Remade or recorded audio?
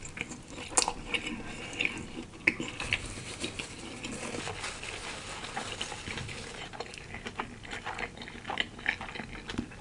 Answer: recorded